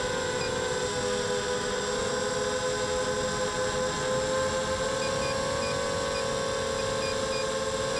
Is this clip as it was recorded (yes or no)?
yes